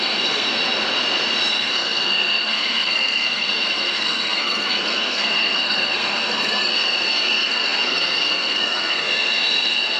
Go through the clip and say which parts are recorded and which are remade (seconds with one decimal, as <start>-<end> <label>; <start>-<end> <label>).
0.0-0.5 remade; 0.5-1.5 recorded; 1.5-10.0 remade